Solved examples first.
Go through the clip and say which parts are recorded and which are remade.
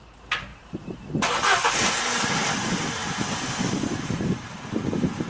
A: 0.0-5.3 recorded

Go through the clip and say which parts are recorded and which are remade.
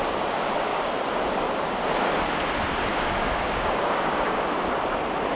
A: 0.0-0.7 recorded; 0.7-1.2 remade; 1.2-2.9 recorded; 2.9-4.2 remade; 4.2-5.4 recorded